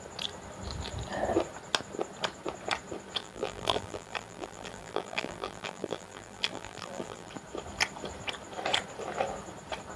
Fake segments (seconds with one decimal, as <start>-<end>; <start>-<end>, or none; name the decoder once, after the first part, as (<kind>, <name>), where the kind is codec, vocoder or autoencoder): 3.2-7.3 (vocoder, BigVGAN v2)